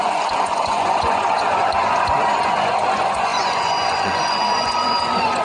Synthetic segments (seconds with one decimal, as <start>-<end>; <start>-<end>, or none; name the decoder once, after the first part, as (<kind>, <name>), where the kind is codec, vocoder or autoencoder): 0.0-5.4 (vocoder, Vocos)